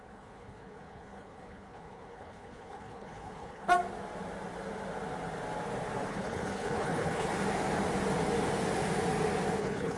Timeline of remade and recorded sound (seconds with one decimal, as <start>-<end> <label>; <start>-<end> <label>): 0.0-3.7 remade; 3.7-6.1 recorded; 6.1-7.3 remade; 7.3-9.6 recorded; 9.6-10.0 remade